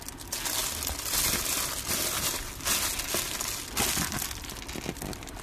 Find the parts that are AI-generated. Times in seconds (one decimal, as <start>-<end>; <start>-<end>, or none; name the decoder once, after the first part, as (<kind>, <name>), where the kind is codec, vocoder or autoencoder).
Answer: none